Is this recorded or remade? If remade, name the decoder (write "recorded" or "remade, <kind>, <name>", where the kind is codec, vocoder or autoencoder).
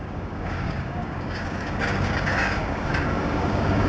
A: remade, codec, DAC